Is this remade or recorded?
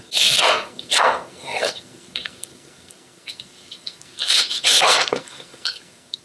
remade